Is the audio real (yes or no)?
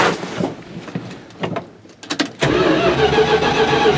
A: yes